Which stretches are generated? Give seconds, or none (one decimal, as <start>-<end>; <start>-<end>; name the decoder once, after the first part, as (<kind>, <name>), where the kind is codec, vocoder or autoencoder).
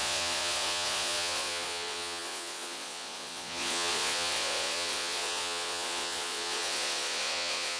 0.0-7.8 (vocoder, Vocos)